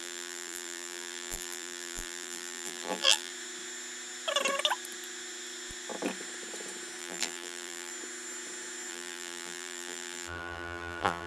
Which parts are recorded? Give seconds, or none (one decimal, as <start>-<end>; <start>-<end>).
3.3-7.0; 7.9-8.9